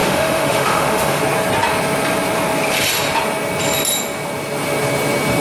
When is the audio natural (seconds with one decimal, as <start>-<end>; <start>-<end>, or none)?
1.2-5.4